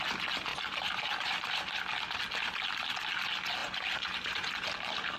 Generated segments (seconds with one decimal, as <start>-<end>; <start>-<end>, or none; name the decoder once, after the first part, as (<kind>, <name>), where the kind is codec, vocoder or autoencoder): 0.5-1.7 (vocoder, BigVGAN v2); 3.6-4.5